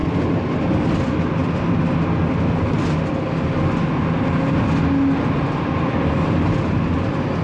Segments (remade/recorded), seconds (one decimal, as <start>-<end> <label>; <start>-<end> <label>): 0.0-7.4 recorded